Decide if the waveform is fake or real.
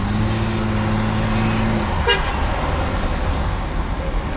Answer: real